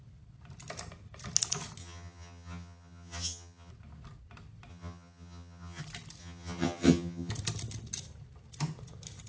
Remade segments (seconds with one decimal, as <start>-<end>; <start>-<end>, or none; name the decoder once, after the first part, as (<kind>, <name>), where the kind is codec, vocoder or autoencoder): 1.8-3.7 (vocoder, HiFi-GAN); 4.7-5.8; 6.2-7.3